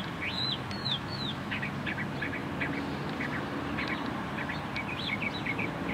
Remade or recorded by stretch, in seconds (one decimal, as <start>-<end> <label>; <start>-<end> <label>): 0.0-0.8 recorded; 0.8-1.7 remade; 1.7-5.9 recorded